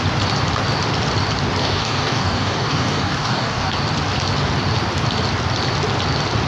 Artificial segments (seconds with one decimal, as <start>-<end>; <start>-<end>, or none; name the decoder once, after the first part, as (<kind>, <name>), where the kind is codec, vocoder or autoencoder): 1.6-3.7 (codec, DAC)